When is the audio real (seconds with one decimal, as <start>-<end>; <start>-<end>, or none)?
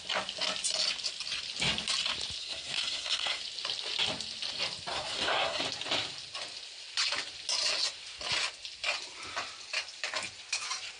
0.0-2.4; 3.4-4.9; 5.6-11.0